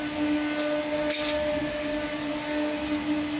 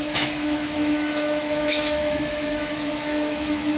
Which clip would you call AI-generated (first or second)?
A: second